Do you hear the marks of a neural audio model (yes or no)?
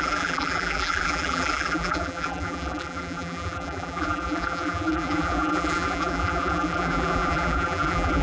yes